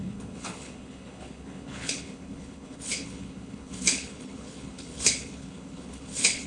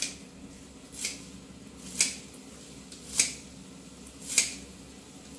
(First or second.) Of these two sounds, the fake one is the first